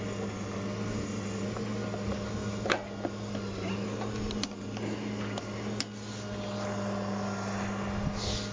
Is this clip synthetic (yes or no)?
no